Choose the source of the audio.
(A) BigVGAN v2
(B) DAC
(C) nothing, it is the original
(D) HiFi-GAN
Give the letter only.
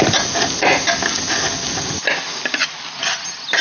C